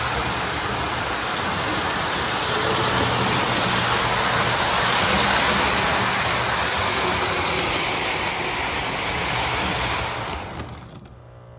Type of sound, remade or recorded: recorded